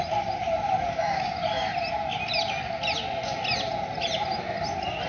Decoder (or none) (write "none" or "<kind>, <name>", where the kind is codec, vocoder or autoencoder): none